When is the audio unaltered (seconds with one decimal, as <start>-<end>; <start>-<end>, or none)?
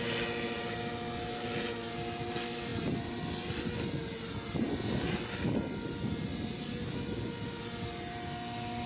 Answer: 0.0-8.9